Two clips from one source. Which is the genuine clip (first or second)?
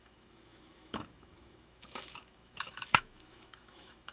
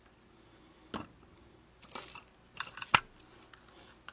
second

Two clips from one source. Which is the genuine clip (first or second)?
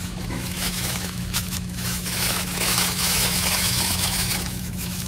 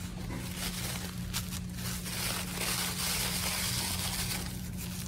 second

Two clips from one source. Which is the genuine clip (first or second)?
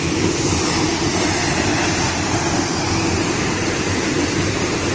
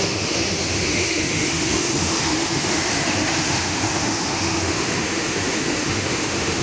first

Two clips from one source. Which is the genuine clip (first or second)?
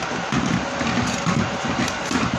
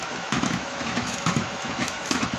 first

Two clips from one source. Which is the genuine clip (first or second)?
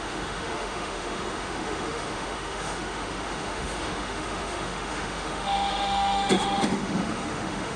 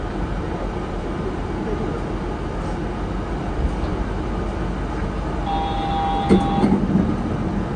second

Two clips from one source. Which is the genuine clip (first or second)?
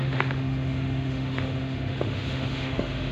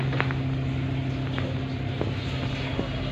second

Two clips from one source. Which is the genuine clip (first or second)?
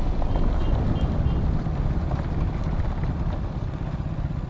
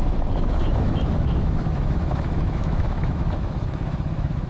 first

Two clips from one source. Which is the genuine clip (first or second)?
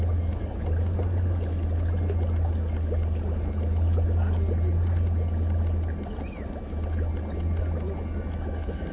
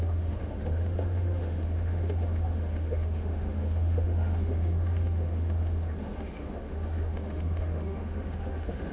first